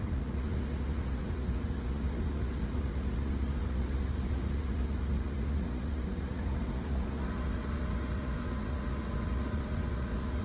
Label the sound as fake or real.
fake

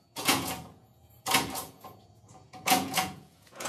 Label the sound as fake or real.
fake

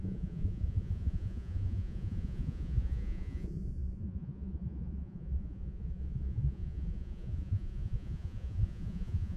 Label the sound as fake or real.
fake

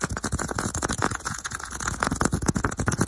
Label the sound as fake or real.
fake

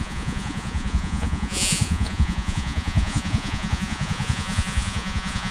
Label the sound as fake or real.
fake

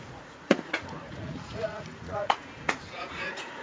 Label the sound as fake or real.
fake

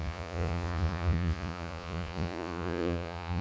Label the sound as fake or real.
fake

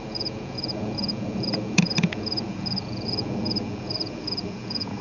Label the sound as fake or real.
fake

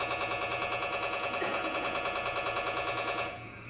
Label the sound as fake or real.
fake